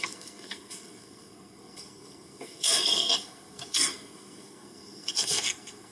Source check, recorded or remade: remade